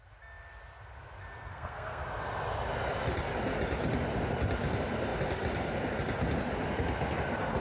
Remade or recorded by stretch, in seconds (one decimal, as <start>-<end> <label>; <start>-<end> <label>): 0.0-1.5 recorded; 1.5-2.0 remade; 2.0-7.6 recorded